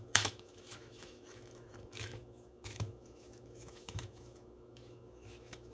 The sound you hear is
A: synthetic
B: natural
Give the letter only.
A